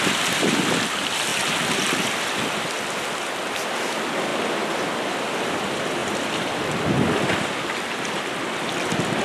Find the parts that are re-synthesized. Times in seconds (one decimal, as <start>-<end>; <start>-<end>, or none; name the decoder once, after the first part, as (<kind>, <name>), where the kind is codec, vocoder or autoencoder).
6.0-6.6 (vocoder, BigVGAN v2)